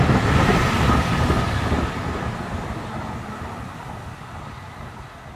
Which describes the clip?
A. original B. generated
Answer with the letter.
A